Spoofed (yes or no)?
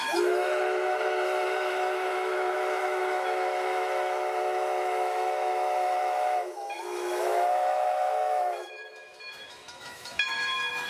yes